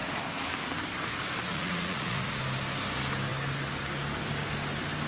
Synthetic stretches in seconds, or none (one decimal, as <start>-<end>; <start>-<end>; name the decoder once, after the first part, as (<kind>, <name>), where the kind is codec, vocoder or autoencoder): 1.5-2.4 (vocoder, Vocos)